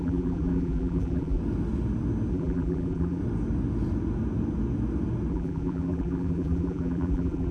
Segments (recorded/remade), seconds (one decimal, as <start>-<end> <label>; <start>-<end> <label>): 0.0-1.4 remade; 1.4-2.3 recorded; 2.3-3.2 remade; 3.2-5.3 recorded; 5.3-7.5 remade